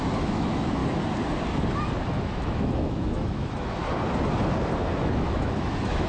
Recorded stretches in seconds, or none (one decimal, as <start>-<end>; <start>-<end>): 0.8-2.1; 3.8-5.0

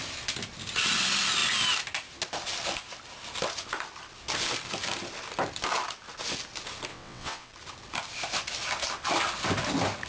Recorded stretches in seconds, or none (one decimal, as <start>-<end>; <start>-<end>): 0.0-6.9; 7.5-10.1